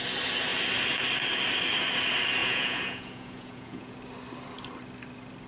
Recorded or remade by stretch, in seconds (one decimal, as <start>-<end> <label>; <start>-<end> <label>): 0.0-2.4 recorded; 2.4-4.0 remade; 4.0-5.5 recorded